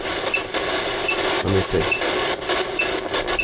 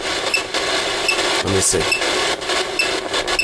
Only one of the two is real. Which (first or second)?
second